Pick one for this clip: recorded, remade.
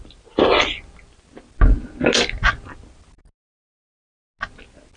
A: recorded